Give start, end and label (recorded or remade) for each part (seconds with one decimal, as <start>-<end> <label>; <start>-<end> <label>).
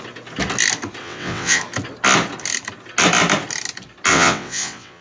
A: 0.0-1.0 recorded; 1.0-1.6 remade; 1.6-4.1 recorded; 4.1-5.0 remade